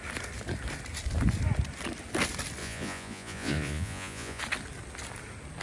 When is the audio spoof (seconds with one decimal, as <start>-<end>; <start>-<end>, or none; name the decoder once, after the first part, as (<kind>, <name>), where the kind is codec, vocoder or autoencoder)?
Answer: 2.6-4.4 (vocoder, Vocos)

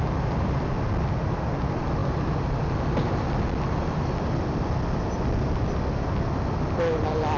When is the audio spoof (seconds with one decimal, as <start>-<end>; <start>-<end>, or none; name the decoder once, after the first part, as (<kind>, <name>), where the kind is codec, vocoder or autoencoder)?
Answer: none

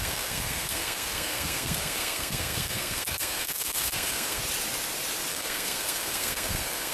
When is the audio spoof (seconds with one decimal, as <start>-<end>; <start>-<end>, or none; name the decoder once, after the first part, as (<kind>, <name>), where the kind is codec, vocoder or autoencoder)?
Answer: 0.0-4.4 (codec, SNAC); 5.3-6.9

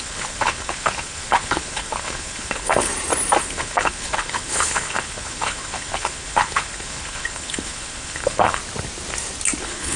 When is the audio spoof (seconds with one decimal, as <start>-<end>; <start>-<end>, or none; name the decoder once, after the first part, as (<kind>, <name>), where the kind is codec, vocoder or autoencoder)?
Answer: 0.0-2.9 (codec, HILCodec); 3.4-8.6; 9.6-10.0